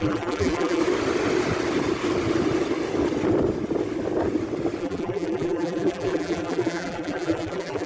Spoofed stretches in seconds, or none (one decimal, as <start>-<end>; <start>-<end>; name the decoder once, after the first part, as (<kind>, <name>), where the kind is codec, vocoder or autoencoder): 0.0-0.8 (vocoder, BigVGAN v2); 4.8-7.9